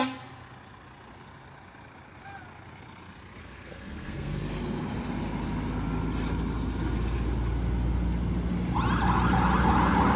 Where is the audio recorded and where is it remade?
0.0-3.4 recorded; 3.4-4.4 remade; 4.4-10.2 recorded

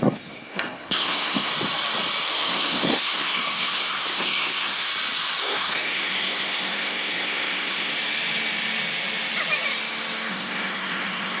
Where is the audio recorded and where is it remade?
0.0-1.5 remade; 1.5-2.3 recorded; 2.3-4.9 remade; 4.9-5.4 recorded; 5.4-7.9 remade; 7.9-10.3 recorded; 10.3-11.4 remade